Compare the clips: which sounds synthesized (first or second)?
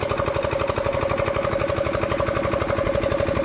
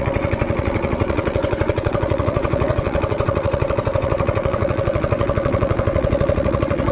second